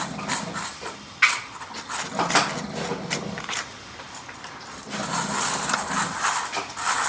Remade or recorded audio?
recorded